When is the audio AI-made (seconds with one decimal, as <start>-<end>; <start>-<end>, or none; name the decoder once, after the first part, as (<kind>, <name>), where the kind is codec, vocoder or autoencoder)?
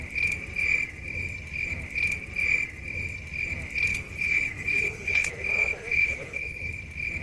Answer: 3.9-5.3 (codec, HILCodec); 6.0-6.7